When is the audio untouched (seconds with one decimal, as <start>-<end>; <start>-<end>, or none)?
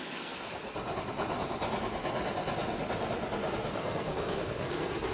0.6-3.7